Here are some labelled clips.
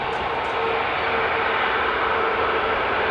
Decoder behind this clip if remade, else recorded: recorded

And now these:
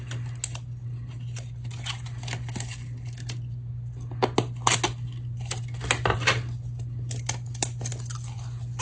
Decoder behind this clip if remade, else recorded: recorded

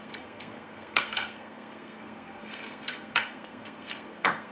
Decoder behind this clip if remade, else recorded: remade, codec, SNAC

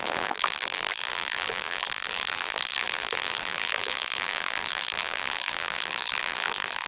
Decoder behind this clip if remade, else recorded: remade, vocoder, BigVGAN v2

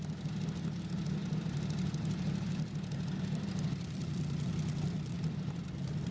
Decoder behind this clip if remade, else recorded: remade, vocoder, BigVGAN v2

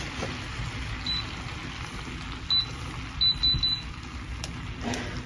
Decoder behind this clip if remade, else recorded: recorded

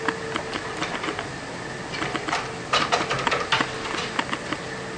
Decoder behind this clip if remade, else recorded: recorded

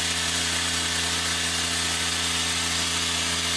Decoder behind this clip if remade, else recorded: recorded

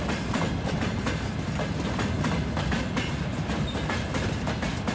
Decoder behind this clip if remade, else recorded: recorded